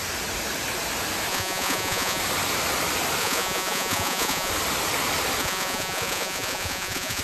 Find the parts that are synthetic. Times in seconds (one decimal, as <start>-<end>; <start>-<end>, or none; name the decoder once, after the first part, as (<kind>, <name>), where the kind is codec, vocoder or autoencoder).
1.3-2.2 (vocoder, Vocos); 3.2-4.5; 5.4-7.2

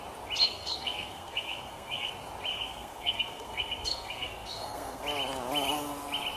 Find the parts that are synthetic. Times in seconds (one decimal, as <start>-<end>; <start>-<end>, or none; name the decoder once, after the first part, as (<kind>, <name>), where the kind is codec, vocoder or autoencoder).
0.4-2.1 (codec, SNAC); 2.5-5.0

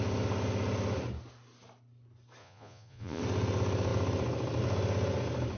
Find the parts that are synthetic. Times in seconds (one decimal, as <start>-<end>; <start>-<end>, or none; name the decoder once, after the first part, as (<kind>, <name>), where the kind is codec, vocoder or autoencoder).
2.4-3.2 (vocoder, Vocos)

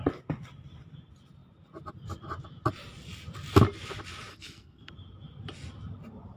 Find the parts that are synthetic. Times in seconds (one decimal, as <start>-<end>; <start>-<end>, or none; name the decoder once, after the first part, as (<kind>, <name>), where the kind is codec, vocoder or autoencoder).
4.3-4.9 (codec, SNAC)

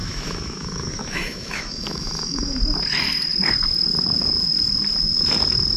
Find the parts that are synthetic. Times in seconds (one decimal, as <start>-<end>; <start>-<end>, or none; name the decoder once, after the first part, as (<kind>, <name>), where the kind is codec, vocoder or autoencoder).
0.0-2.4 (autoencoder, DAC-VAE)